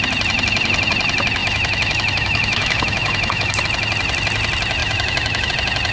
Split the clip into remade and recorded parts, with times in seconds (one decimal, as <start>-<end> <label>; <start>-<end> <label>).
0.0-1.4 recorded; 1.4-3.6 remade; 3.6-4.8 recorded; 4.8-5.5 remade; 5.5-5.9 recorded